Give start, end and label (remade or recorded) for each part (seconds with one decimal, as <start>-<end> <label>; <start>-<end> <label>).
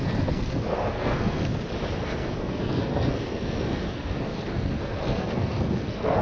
0.0-1.5 remade; 1.5-2.0 recorded; 2.0-6.2 remade